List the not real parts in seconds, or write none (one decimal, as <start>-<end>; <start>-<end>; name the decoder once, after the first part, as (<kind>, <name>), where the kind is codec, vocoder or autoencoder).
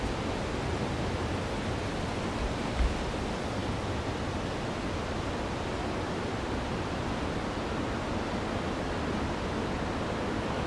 none